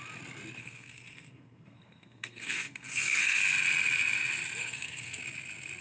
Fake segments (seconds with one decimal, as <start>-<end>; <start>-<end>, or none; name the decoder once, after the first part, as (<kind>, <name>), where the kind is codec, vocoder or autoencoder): 0.6-3.4 (codec, SNAC); 4.6-5.2